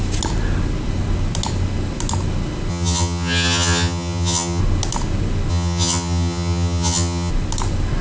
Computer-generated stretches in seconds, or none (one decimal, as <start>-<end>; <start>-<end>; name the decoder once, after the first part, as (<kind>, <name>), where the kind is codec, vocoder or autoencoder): 2.7-4.6 (vocoder, HiFi-GAN); 5.5-7.3